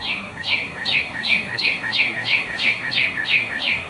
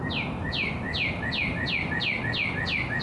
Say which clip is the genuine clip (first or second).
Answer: second